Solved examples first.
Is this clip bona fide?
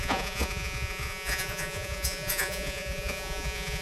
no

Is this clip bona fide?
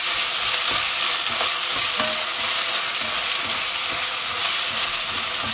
yes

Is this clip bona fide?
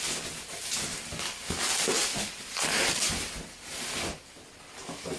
yes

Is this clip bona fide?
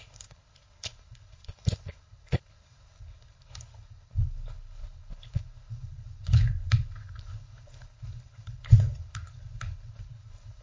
no